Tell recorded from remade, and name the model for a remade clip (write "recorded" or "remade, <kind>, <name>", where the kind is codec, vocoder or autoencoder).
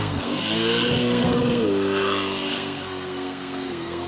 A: remade, codec, SNAC